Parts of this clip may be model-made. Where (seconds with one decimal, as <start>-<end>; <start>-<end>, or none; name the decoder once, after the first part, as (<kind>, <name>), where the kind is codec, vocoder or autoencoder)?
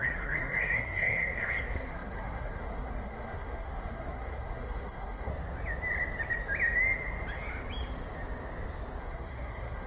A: 0.0-5.3 (codec, SNAC); 9.0-9.9